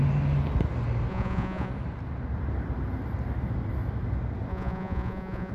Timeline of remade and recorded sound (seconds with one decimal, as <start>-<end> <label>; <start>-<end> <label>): 0.0-1.1 recorded; 1.1-1.7 remade; 1.7-4.5 recorded; 4.5-5.5 remade